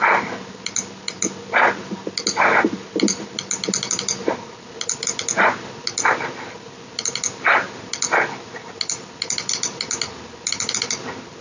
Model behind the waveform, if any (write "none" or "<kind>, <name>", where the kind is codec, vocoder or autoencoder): none